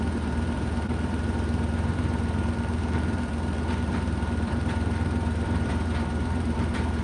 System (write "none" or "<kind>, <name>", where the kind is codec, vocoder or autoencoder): vocoder, BigVGAN v2